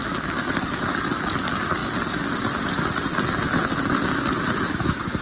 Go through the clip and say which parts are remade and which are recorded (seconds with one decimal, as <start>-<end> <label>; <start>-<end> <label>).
0.0-5.2 recorded